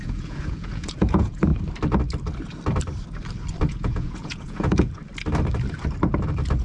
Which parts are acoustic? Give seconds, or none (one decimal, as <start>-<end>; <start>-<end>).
1.5-3.7; 5.0-6.6